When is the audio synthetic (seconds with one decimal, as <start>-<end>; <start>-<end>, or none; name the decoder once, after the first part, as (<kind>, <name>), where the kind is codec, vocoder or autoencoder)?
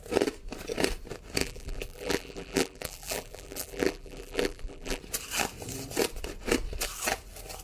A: 1.4-5.0 (vocoder, BigVGAN v2)